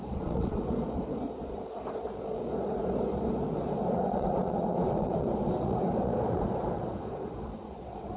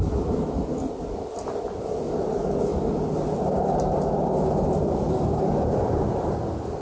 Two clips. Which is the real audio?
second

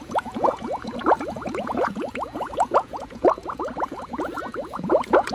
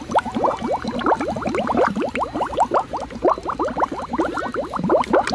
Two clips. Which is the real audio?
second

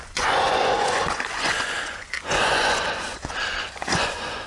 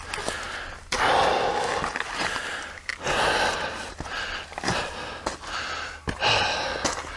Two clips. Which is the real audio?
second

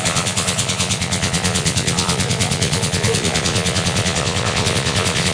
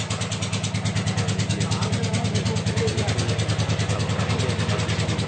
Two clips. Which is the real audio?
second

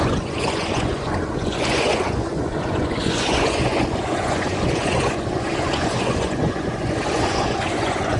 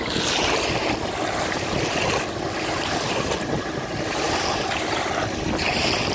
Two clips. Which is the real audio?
second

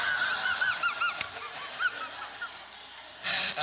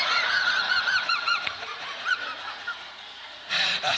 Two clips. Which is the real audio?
first